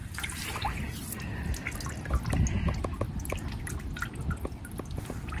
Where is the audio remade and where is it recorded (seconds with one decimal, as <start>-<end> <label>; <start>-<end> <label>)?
0.0-5.4 recorded